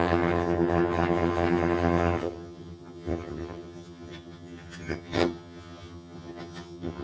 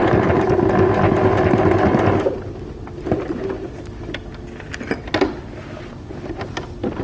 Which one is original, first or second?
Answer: second